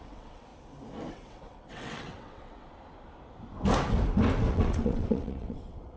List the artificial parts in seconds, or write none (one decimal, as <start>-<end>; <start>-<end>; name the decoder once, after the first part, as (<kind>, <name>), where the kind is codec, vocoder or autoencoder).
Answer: 0.0-0.5 (vocoder, WaveNeXt); 1.1-2.7; 4.5-6.0